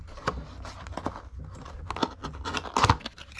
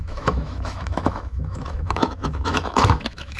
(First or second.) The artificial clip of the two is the second